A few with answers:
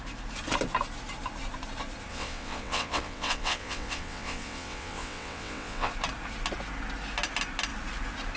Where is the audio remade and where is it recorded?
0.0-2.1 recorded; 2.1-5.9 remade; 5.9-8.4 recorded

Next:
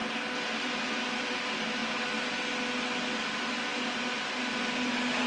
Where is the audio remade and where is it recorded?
0.0-5.3 recorded

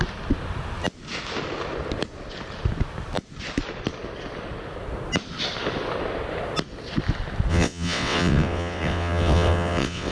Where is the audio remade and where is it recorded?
0.0-7.5 recorded; 7.5-10.1 remade

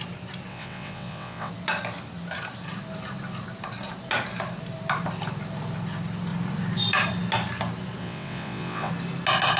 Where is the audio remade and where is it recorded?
0.0-0.5 recorded; 0.5-1.5 remade; 1.5-8.0 recorded; 8.0-8.9 remade; 8.9-9.6 recorded

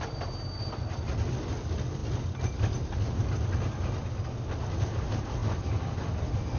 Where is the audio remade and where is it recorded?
0.0-6.6 recorded

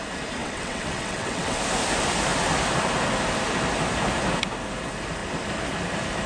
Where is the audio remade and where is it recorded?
0.0-0.4 recorded; 0.4-1.6 remade; 1.6-6.3 recorded

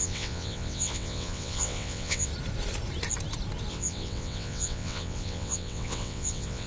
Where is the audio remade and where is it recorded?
0.0-2.3 remade; 2.3-3.7 recorded; 3.7-6.7 remade

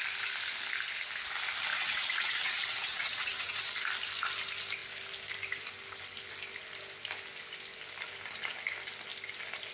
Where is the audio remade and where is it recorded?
0.0-1.7 recorded; 1.7-3.6 remade; 3.6-9.7 recorded